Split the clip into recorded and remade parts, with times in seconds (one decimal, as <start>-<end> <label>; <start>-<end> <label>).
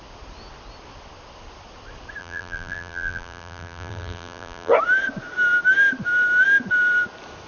0.0-2.2 recorded; 2.2-4.7 remade; 4.7-7.5 recorded